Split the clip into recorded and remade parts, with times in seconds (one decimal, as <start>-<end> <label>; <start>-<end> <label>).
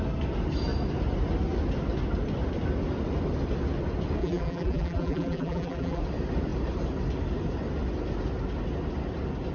0.0-4.2 recorded; 4.2-6.0 remade; 6.0-9.5 recorded